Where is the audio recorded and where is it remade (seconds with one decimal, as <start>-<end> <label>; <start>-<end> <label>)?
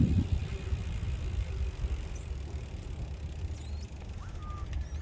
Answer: 0.0-5.0 recorded